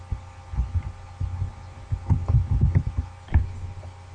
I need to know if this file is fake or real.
real